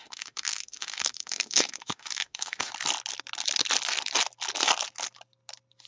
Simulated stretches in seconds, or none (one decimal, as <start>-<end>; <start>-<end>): 0.0-2.7